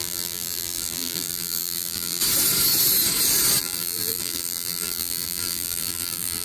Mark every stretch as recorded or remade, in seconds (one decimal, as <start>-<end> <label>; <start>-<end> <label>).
0.0-2.2 remade; 2.2-3.6 recorded; 3.6-6.4 remade